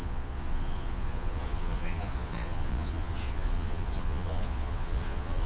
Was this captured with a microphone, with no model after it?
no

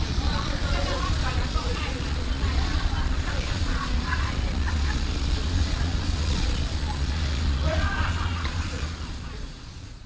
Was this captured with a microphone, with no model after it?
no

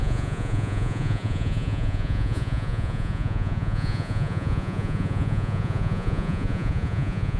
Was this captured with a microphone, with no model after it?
no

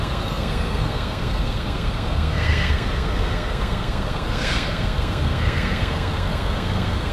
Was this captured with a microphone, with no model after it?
no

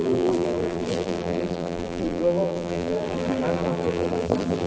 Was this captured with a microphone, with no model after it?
no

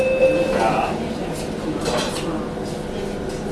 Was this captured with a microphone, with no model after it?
yes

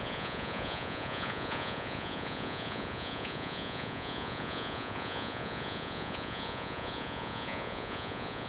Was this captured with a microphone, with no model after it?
no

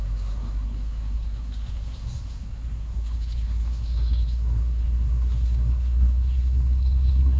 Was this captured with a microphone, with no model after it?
no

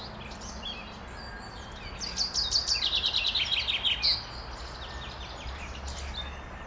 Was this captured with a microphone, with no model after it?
yes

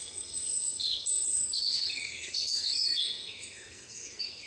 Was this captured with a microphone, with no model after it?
no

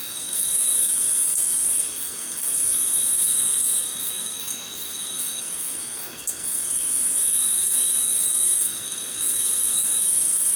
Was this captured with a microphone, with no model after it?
no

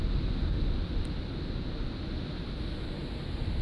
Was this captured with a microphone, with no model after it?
yes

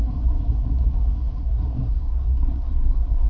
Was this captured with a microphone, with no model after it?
no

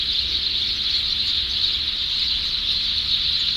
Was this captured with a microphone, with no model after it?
yes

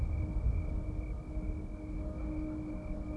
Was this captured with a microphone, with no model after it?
yes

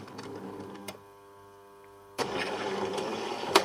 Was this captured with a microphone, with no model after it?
no